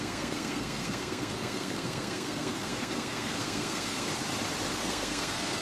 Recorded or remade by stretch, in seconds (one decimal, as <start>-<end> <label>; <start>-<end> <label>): 0.0-4.1 remade; 4.1-4.7 recorded; 4.7-5.6 remade